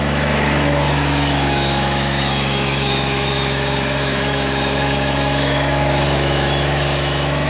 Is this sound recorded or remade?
remade